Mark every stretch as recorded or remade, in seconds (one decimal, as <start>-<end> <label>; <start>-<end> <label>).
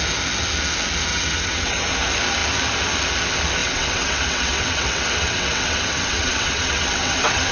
0.0-1.1 recorded; 1.1-1.8 remade; 1.8-3.6 recorded; 3.6-7.5 remade